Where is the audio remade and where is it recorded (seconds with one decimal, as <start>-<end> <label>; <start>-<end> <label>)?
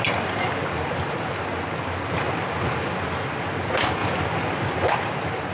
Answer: 0.0-5.5 recorded